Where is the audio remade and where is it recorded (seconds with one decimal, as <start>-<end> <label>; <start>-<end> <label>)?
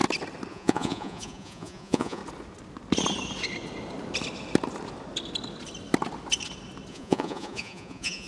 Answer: 0.0-0.5 recorded; 0.5-2.2 remade; 2.2-6.9 recorded; 6.9-8.3 remade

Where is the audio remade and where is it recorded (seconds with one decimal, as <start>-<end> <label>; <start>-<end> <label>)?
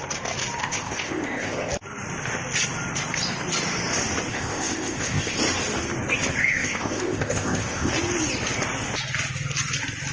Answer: 0.0-0.6 recorded; 0.6-1.7 remade; 1.7-4.3 recorded; 4.3-5.4 remade; 5.4-6.4 recorded; 6.4-7.9 remade; 7.9-10.1 recorded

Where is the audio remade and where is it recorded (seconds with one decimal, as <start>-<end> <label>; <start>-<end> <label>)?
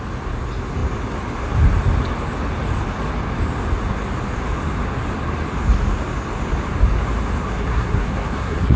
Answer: 0.0-7.4 recorded; 7.4-8.8 remade